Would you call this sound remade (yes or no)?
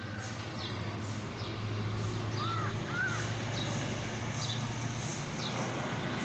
no